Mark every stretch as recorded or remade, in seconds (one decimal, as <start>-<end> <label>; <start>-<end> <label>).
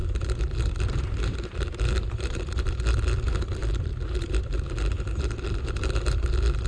0.0-2.7 remade; 2.7-3.6 recorded; 3.6-6.3 remade; 6.3-6.7 recorded